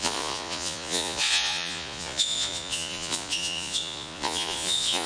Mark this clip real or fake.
fake